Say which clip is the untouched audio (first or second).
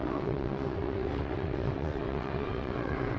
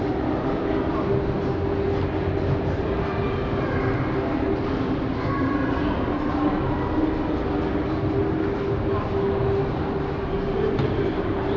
second